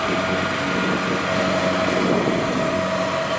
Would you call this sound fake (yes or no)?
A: no